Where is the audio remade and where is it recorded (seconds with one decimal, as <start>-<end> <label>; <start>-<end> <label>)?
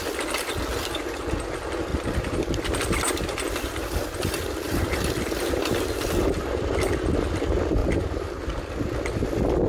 0.0-1.9 recorded; 1.9-4.9 remade; 4.9-7.8 recorded; 7.8-8.7 remade; 8.7-9.7 recorded